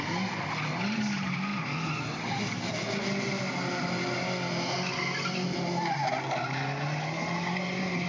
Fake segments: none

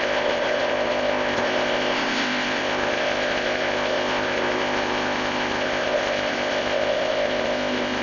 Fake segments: 0.0-8.0 (codec, ZipCodec)

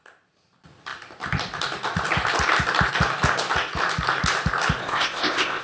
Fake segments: 4.8-5.6 (codec, ZipCodec)

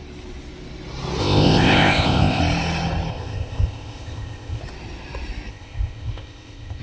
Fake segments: 1.2-2.4 (codec, ZipCodec); 3.1-4.6; 5.5-6.8

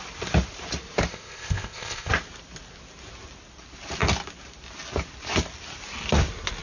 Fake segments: 1.1-2.1 (codec, ZipCodec)

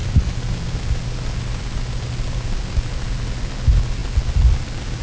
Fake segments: none